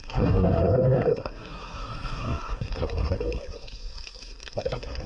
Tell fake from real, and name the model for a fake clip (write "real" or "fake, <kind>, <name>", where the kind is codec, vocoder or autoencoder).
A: fake, codec, SNAC